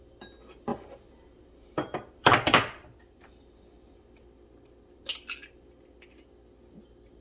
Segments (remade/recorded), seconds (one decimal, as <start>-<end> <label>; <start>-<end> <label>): 0.0-0.7 recorded; 0.7-3.3 remade; 3.3-7.2 recorded